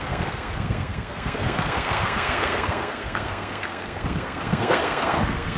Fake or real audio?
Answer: fake